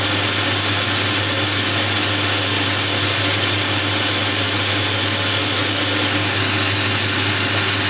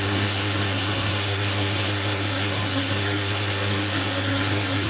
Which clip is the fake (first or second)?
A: second